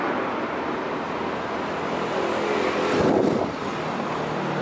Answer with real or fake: real